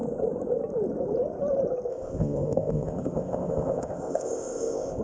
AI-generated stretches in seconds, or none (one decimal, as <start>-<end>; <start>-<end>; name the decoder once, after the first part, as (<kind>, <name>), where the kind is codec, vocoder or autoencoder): 1.9-5.0 (codec, ZipCodec)